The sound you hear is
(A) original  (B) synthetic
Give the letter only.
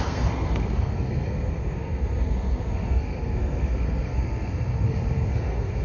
B